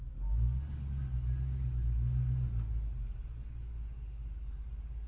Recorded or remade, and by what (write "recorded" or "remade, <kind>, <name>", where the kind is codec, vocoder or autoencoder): recorded